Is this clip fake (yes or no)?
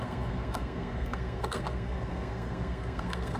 yes